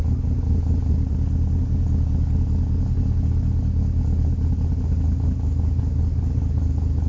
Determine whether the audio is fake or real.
real